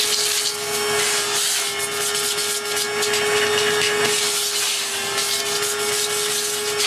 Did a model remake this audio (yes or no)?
no